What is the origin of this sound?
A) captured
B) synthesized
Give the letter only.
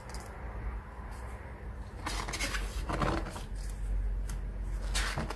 A